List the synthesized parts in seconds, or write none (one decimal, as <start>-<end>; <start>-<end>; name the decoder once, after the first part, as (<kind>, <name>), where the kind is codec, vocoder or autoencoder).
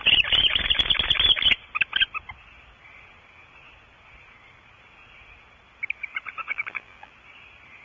6.5-7.1 (vocoder, BigVGAN v2)